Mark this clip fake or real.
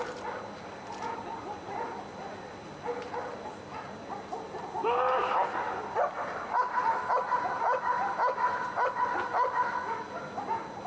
real